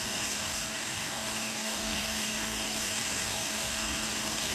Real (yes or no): no